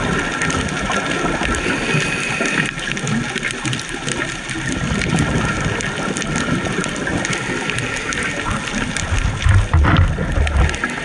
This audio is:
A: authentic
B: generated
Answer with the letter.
A